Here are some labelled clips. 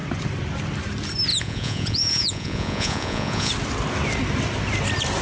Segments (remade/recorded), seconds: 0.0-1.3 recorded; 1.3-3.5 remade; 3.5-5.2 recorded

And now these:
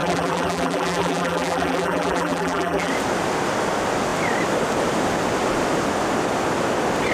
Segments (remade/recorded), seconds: 0.0-2.9 remade; 2.9-7.1 recorded

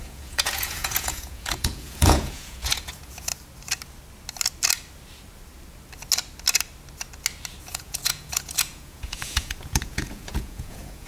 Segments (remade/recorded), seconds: 0.0-3.3 remade; 3.3-7.6 recorded; 7.6-11.1 remade

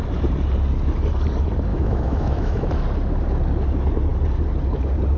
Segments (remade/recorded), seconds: 0.0-1.7 recorded; 1.7-2.7 remade; 2.7-5.2 recorded

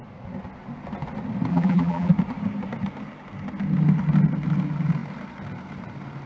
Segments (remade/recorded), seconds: 0.0-1.5 recorded; 1.5-2.1 remade; 2.1-6.3 recorded

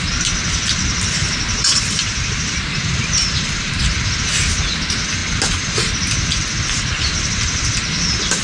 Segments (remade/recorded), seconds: 0.0-1.2 recorded; 1.2-4.6 remade; 4.6-8.4 recorded

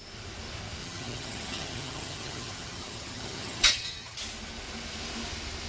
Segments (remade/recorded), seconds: 0.0-0.8 recorded; 0.8-4.2 remade; 4.2-5.7 recorded

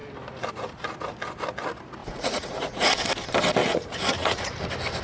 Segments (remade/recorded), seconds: 0.0-2.0 recorded; 2.0-2.9 remade; 2.9-3.6 recorded; 3.6-4.6 remade; 4.6-5.0 recorded